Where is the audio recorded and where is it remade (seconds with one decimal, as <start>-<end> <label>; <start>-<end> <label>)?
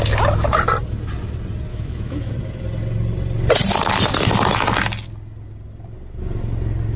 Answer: 0.0-1.7 recorded; 1.7-2.3 remade; 2.3-7.0 recorded